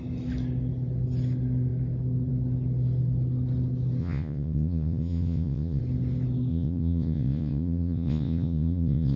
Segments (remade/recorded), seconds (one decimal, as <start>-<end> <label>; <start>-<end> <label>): 0.0-4.0 recorded; 4.0-5.8 remade; 5.8-6.5 recorded; 6.5-9.2 remade